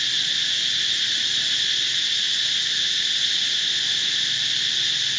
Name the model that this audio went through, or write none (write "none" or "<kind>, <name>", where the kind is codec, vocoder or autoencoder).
none